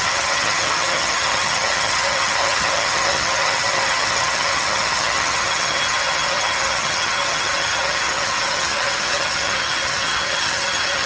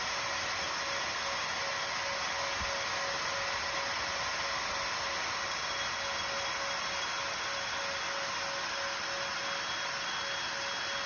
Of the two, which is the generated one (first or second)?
first